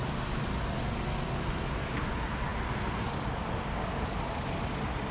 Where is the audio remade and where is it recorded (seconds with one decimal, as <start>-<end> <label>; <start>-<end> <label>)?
0.0-5.1 recorded